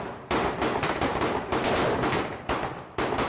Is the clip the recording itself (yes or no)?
yes